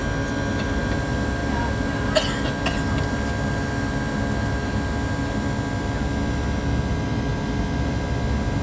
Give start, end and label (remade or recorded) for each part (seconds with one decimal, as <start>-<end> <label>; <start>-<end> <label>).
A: 0.0-8.6 recorded